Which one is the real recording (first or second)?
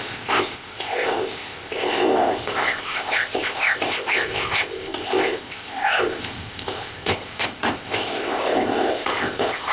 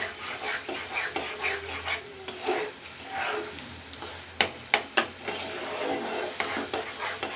second